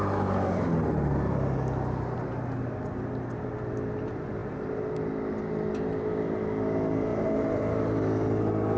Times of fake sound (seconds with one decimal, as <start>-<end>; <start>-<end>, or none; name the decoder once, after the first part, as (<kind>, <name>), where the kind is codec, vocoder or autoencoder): 7.1-8.0 (vocoder, BigVGAN v2)